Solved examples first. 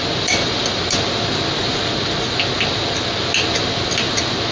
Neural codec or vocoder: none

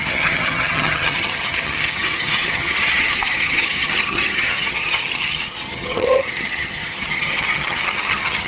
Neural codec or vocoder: vocoder, HiFi-GAN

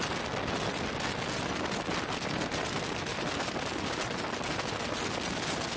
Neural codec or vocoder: none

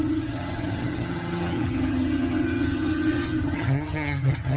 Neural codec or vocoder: vocoder, HiFi-GAN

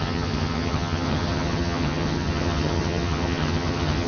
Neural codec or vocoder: vocoder, HiFi-GAN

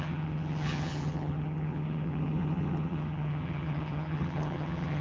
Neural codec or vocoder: vocoder, HiFi-GAN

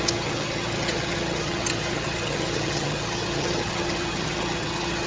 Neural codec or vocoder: vocoder, HiFi-GAN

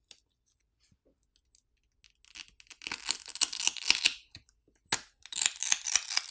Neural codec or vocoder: none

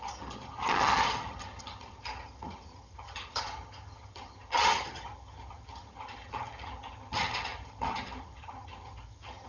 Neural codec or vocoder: vocoder, HiFi-GAN